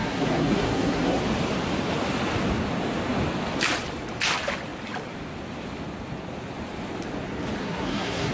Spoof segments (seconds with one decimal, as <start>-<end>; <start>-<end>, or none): 0.0-1.2; 7.6-8.3